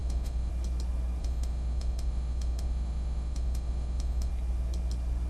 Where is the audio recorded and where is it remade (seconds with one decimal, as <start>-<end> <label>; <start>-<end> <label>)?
0.0-0.5 remade; 0.5-1.2 recorded; 1.2-4.3 remade; 4.3-5.3 recorded